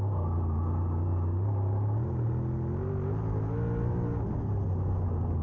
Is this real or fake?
real